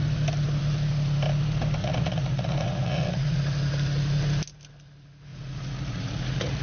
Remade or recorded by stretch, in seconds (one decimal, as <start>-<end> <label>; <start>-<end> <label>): 0.0-1.8 recorded; 1.8-3.4 remade; 3.4-5.3 recorded; 5.3-6.6 remade